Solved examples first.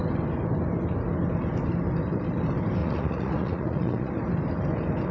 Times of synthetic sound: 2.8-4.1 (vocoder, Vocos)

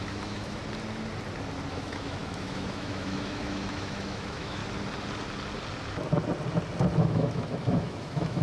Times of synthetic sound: 0.0-0.6 (autoencoder, DAC-VAE); 1.7-4.6; 7.0-8.4

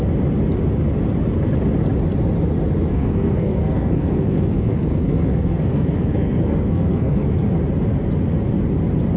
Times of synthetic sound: 2.9-7.3 (codec, SNAC)

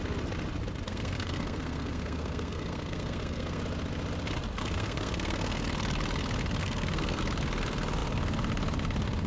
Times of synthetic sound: 0.9-3.6 (codec, SNAC); 4.6-5.6; 6.6-7.2

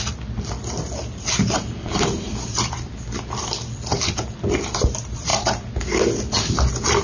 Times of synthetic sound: 0.0-2.3 (vocoder, BigVGAN v2); 4.5-5.3

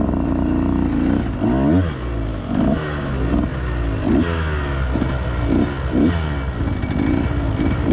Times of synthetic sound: 2.3-3.1 (autoencoder, DAC-VAE)

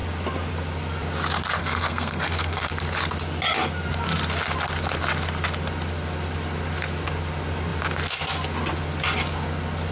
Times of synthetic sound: 1.6-2.7 (codec, SNAC)

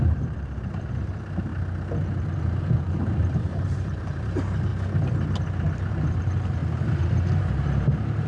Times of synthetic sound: 0.0-1.5 (vocoder, BigVGAN v2); 2.2-4.7; 5.9-6.6; 7.4-8.3